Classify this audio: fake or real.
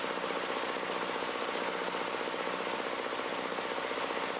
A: real